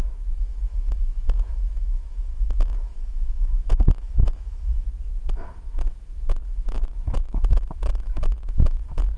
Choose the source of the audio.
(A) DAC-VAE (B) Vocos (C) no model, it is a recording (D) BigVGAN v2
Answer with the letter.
A